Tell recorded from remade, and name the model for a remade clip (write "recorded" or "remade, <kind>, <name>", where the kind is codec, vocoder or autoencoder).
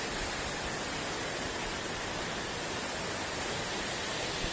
recorded